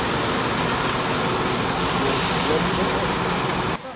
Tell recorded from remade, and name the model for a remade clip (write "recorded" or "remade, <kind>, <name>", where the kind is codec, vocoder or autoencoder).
recorded